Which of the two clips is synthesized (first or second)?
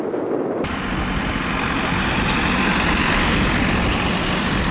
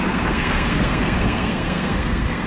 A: second